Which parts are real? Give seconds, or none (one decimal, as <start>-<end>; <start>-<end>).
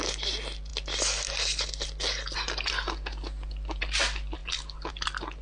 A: 0.0-5.4